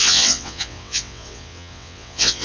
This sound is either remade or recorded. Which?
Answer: remade